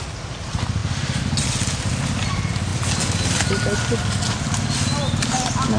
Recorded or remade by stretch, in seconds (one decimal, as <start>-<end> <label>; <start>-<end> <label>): 0.0-5.8 recorded